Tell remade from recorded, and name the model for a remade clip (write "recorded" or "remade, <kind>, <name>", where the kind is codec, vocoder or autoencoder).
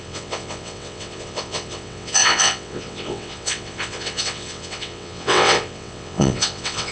remade, vocoder, WaveNeXt